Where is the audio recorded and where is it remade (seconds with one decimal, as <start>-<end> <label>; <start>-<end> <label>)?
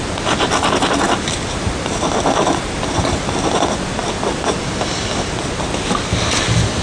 0.0-6.8 recorded